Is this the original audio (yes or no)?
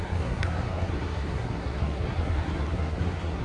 no